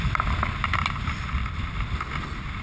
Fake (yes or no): no